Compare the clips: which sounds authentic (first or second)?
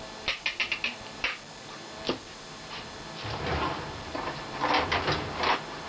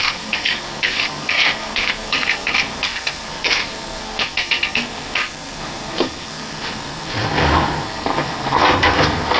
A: first